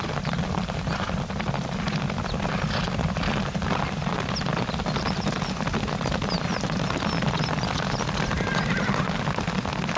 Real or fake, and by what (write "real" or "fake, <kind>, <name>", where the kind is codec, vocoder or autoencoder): real